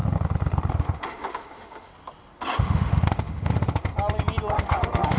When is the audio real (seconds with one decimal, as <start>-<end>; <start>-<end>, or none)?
0.0-0.7; 1.9-2.6; 3.9-4.5

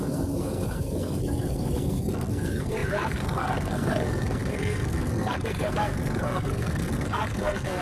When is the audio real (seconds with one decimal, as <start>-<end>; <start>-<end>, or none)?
none

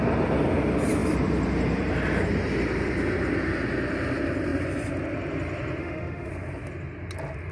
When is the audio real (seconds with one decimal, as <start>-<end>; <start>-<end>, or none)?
0.0-5.8; 6.3-7.5